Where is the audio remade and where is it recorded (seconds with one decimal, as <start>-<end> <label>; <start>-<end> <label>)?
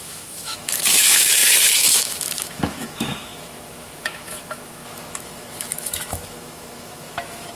0.0-7.6 remade